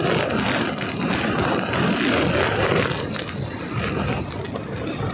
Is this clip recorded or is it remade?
recorded